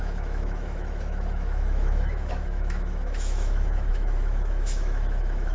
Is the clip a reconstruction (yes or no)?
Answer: yes